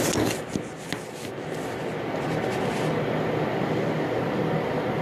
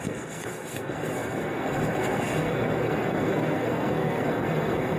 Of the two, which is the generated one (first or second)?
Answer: second